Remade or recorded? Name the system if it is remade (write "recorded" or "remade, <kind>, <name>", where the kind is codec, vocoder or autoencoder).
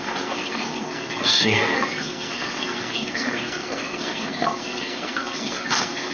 remade, codec, SNAC